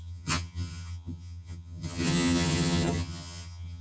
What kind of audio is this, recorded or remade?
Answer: remade